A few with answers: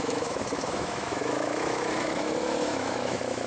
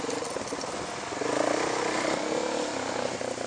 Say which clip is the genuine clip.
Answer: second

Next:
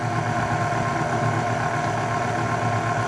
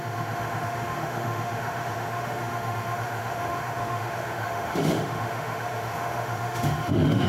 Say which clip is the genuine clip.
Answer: first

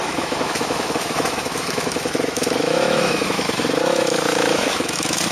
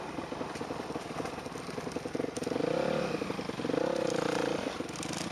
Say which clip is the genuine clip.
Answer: second